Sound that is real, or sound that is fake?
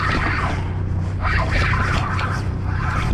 fake